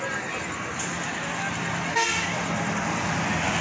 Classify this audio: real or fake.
real